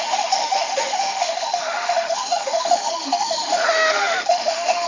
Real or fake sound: fake